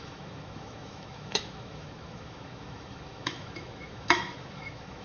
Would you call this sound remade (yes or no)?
yes